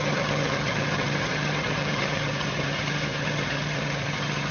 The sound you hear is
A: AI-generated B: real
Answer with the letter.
A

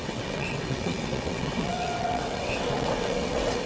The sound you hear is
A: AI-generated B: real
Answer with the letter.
A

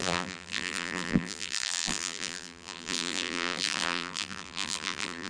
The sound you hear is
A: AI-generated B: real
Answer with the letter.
A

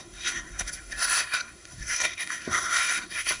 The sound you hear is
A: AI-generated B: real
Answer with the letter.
A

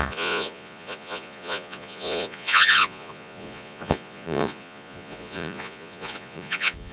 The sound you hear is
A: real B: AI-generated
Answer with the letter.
B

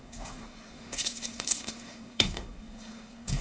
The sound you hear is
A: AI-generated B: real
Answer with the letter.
A